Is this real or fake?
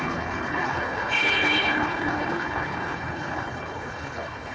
fake